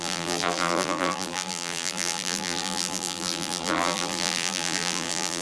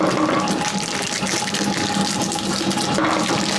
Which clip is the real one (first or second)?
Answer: second